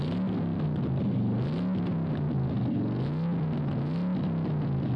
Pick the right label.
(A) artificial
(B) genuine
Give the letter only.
B